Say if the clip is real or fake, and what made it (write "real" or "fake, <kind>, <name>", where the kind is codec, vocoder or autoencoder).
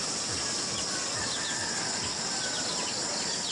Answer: real